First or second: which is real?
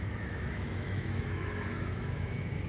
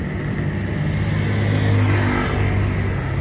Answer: second